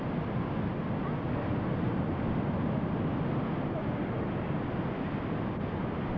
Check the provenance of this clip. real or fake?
real